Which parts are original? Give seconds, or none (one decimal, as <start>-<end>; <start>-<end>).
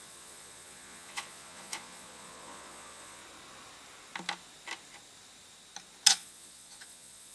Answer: 3.2-6.1